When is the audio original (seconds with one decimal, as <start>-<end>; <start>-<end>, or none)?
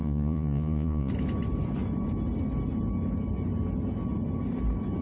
1.1-5.0